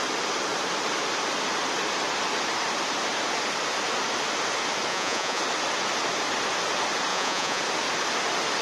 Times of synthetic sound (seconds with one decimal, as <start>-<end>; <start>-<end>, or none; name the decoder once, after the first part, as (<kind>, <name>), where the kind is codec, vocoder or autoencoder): 4.9-5.4 (vocoder, Vocos); 7.1-7.6